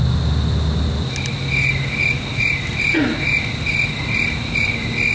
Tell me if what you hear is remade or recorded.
recorded